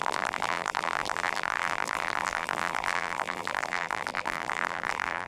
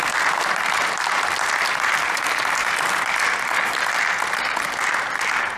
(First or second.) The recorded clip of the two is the second